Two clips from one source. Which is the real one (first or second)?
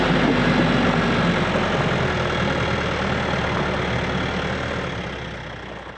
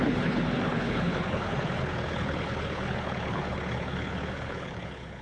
first